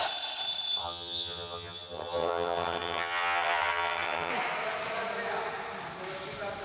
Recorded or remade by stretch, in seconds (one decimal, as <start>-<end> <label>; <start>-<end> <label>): 0.0-0.8 recorded; 0.8-4.3 remade; 4.3-6.6 recorded